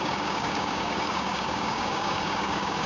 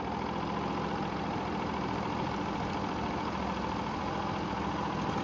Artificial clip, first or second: first